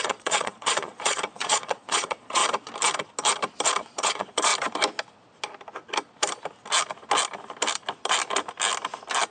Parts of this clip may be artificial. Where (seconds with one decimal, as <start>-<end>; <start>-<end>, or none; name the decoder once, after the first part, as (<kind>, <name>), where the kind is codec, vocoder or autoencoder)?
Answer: 0.0-2.4 (vocoder, Vocos); 3.8-4.5